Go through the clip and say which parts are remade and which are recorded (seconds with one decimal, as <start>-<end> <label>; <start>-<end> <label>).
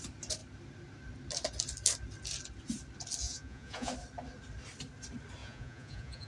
0.0-3.2 recorded; 3.2-3.9 remade; 3.9-5.4 recorded; 5.4-6.3 remade